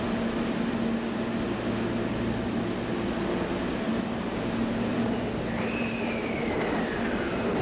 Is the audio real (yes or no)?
yes